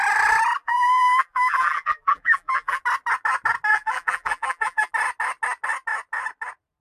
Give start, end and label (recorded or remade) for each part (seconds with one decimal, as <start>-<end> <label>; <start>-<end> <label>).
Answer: 0.0-0.6 recorded; 0.6-2.8 remade; 2.8-3.7 recorded; 3.7-4.9 remade; 4.9-6.8 recorded